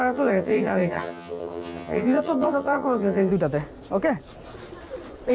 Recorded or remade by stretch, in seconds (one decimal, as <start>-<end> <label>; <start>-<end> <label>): 0.0-3.3 remade; 3.3-5.3 recorded